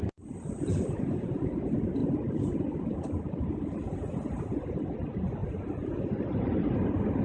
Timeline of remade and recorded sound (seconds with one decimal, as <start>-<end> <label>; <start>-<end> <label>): 0.0-7.2 recorded